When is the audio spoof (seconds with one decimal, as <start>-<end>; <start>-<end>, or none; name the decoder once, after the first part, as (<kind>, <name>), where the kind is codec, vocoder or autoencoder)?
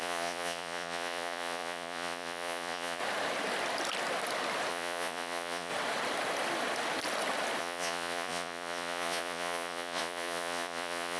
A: 0.0-3.0 (vocoder, Vocos); 4.7-5.7; 7.6-11.2